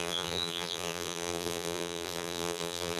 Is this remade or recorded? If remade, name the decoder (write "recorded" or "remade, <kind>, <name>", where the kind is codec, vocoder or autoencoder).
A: remade, vocoder, BigVGAN v2